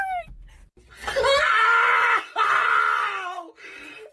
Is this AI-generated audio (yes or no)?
no